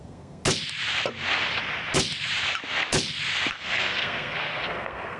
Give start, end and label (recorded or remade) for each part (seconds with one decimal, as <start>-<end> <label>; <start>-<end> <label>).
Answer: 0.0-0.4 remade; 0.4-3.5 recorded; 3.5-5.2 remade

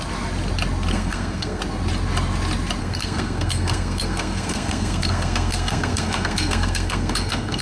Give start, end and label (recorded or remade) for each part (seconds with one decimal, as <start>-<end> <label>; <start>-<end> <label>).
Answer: 0.0-0.9 recorded; 0.9-1.6 remade; 1.6-2.8 recorded; 2.8-7.6 remade

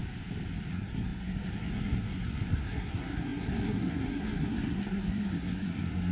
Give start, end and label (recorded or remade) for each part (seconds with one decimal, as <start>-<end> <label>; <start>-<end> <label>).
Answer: 0.0-0.7 recorded; 0.7-6.1 remade

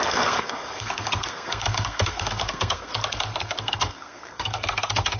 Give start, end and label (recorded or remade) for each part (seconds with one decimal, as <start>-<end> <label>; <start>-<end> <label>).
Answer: 0.0-2.9 remade; 2.9-3.3 recorded; 3.3-5.2 remade

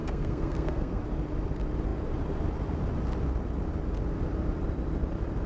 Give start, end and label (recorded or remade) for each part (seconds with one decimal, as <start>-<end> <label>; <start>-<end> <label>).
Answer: 0.0-1.0 remade; 1.0-5.5 recorded